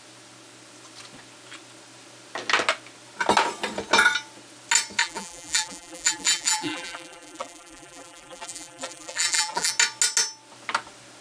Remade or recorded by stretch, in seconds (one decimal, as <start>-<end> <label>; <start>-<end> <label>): 0.0-5.0 recorded; 5.0-9.7 remade; 9.7-11.2 recorded